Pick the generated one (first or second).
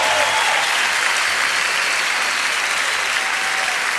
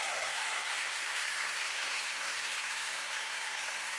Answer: second